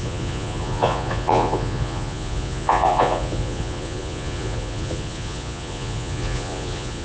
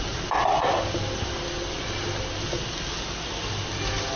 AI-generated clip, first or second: first